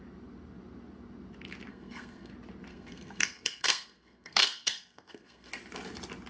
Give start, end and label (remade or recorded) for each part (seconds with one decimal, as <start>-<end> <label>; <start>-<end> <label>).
0.0-1.7 recorded; 1.7-2.3 remade; 2.3-2.7 recorded; 2.7-5.5 remade; 5.5-6.3 recorded